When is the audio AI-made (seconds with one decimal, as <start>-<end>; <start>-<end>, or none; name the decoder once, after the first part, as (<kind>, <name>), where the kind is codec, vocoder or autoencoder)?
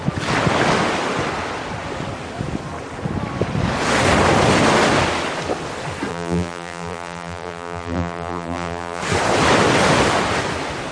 6.1-9.0 (vocoder, BigVGAN v2)